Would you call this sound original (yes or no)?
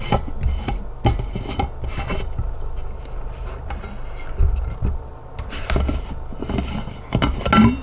yes